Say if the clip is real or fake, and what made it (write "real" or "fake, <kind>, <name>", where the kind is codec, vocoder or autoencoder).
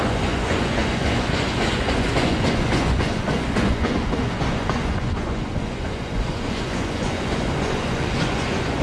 fake, vocoder, Vocos